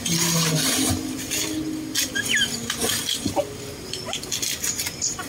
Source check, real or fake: real